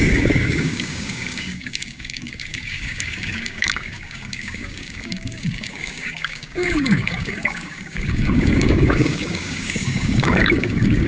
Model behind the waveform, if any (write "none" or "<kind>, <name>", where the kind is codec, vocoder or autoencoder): codec, DAC